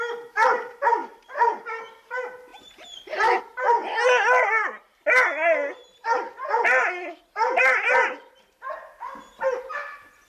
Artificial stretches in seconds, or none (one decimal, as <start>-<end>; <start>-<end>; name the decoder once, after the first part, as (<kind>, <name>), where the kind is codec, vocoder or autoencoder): 1.0-1.8 (vocoder, BigVGAN v2); 2.5-3.4